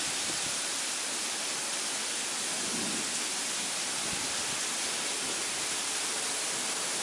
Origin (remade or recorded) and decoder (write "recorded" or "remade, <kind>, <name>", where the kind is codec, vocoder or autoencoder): recorded